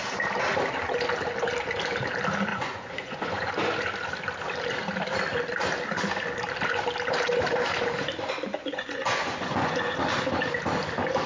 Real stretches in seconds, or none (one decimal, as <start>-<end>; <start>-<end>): 0.0-2.5; 3.5-8.6; 10.0-11.3